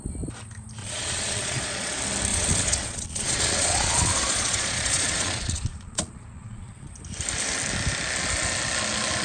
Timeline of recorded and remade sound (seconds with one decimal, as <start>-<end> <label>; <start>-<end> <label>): 0.0-0.8 recorded; 0.8-1.9 remade; 1.9-2.3 recorded; 2.3-6.9 remade; 6.9-9.2 recorded